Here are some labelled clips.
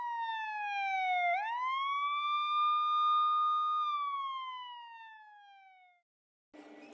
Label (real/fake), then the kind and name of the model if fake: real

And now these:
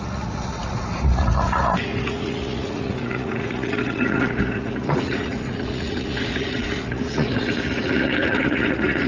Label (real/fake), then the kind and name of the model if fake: fake, vocoder, Vocos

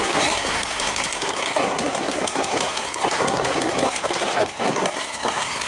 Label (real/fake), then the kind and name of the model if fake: fake, codec, SNAC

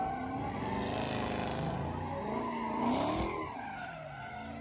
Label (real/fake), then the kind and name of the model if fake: real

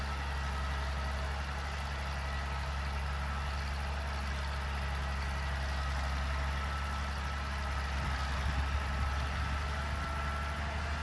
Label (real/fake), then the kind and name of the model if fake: real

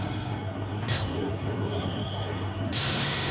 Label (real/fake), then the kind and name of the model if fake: fake, codec, SNAC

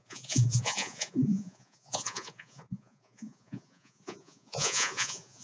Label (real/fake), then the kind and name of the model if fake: fake, vocoder, Vocos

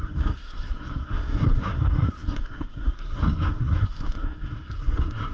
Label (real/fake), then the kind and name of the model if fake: fake, codec, SNAC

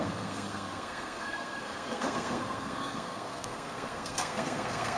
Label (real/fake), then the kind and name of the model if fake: fake, codec, SNAC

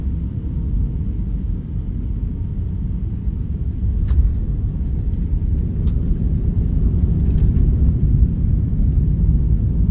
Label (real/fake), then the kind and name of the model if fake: real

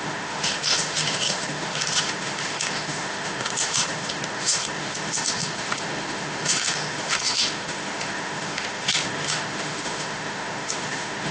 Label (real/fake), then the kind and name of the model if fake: fake, autoencoder, DAC-VAE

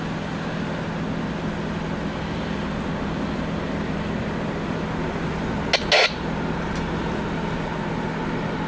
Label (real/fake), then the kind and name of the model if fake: real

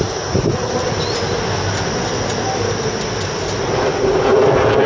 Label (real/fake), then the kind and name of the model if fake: real